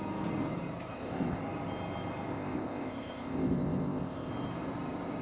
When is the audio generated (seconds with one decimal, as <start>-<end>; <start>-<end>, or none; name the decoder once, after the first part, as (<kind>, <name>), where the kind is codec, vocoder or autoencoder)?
0.9-1.4 (codec, ZipCodec); 2.3-4.3